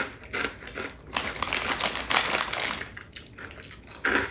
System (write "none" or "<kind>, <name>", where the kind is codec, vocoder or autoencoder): none